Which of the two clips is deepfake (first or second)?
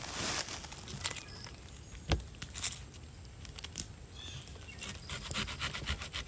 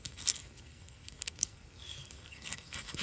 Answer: second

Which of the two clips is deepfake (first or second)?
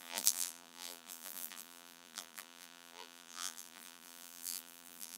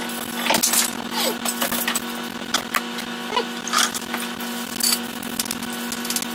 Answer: first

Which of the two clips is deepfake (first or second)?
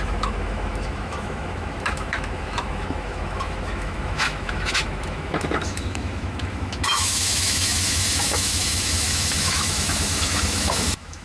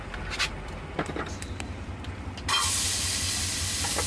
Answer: first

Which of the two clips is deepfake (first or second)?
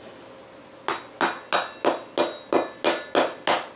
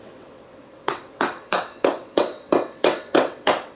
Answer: second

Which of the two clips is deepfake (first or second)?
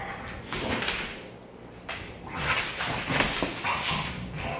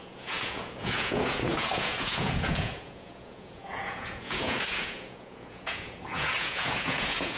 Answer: second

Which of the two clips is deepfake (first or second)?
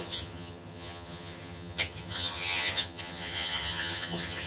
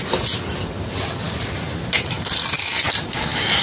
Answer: first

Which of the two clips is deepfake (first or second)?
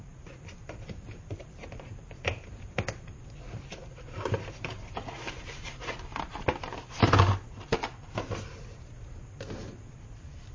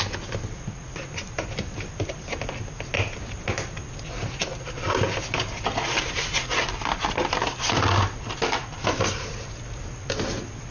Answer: first